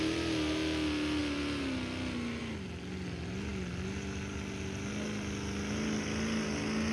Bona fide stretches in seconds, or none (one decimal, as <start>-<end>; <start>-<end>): 0.0-6.9